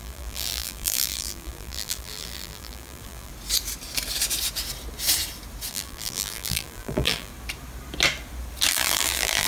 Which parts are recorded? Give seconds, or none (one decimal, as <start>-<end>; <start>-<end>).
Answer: 3.3-5.7; 7.3-8.7